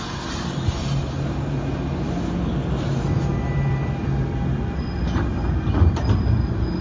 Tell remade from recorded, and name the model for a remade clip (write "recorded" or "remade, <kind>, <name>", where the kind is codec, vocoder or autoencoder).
recorded